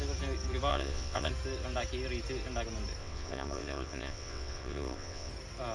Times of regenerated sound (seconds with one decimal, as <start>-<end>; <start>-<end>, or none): 0.7-1.3; 3.0-5.3